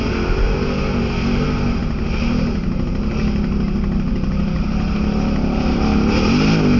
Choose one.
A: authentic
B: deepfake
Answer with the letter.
A